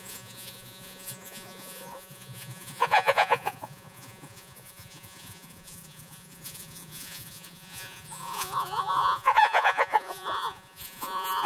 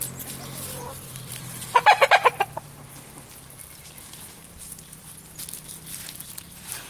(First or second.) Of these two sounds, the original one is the second